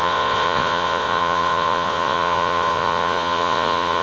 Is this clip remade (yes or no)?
yes